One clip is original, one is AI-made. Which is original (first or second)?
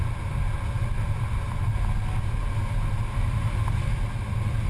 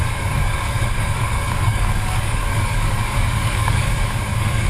first